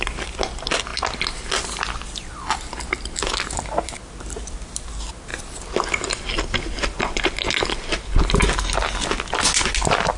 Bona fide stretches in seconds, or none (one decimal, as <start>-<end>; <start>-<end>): 0.0-10.2